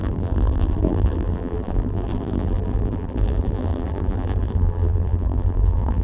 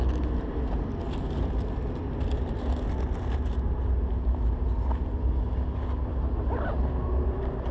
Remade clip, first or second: first